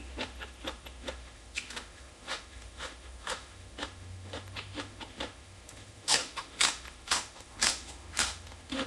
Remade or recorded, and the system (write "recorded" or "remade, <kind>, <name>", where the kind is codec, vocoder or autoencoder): remade, autoencoder, DAC-VAE